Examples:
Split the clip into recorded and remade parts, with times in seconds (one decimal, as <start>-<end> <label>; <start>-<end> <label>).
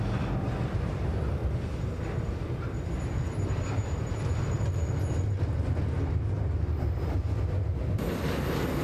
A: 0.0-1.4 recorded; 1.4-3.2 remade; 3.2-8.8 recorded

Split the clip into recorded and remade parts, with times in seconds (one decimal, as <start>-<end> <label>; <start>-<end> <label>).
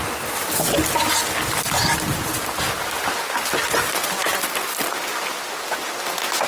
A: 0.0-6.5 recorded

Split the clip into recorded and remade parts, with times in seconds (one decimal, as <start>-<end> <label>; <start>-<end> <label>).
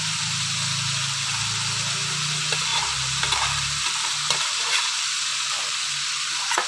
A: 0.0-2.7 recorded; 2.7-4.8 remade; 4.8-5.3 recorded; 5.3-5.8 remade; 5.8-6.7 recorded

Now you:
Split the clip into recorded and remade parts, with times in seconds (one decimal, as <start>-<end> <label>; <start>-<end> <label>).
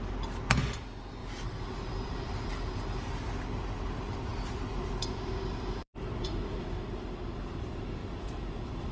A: 0.0-1.2 recorded; 1.2-2.8 remade; 2.8-4.3 recorded; 4.3-6.1 remade; 6.1-8.0 recorded; 8.0-8.9 remade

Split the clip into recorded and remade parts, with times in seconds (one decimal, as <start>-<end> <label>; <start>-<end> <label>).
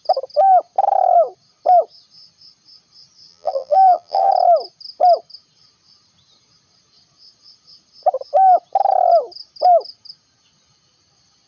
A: 0.0-3.3 recorded; 3.3-4.3 remade; 4.3-11.5 recorded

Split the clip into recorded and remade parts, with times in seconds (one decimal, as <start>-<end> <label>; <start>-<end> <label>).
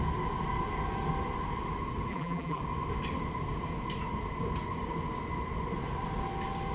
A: 0.0-2.1 recorded; 2.1-2.6 remade; 2.6-6.7 recorded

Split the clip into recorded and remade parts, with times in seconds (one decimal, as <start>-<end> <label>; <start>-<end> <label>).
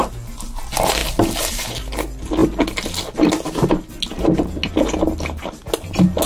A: 0.0-1.0 recorded; 1.0-1.7 remade; 1.7-6.3 recorded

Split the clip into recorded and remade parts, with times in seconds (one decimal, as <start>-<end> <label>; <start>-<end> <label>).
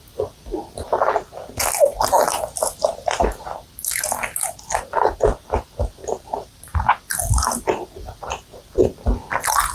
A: 0.0-6.0 recorded; 6.0-6.6 remade; 6.6-9.7 recorded